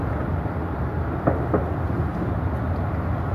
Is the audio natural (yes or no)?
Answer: yes